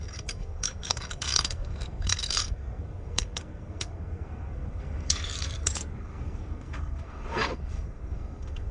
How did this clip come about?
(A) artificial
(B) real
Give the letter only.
A